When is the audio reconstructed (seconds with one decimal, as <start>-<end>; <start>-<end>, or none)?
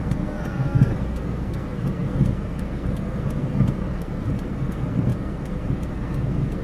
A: 0.0-6.6